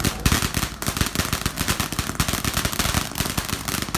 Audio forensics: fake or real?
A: real